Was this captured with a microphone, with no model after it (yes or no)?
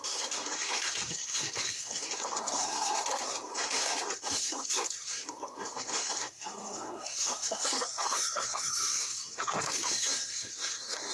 no